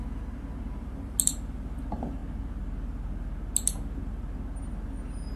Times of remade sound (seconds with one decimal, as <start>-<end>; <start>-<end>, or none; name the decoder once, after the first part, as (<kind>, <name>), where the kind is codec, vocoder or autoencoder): none